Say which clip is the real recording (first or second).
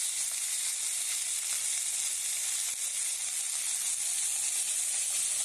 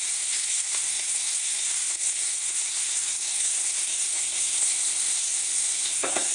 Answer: first